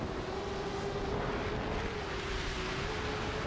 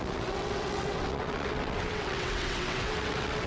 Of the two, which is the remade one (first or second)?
second